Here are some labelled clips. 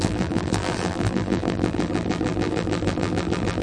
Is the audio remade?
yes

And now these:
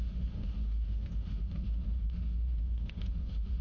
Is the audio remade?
yes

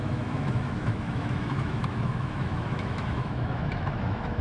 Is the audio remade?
yes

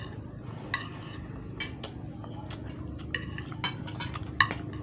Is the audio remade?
no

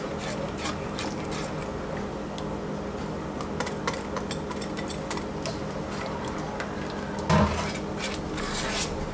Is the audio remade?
no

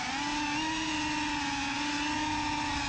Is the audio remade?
no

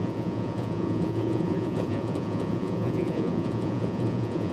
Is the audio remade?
yes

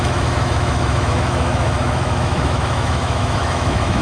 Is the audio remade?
yes